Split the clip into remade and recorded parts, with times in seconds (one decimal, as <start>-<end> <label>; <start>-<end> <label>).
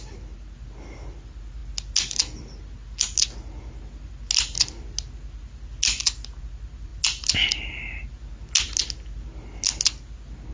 0.0-10.5 recorded